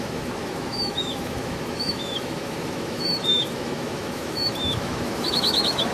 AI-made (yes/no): yes